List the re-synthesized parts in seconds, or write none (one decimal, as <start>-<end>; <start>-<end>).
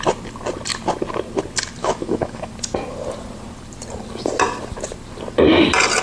1.8-2.5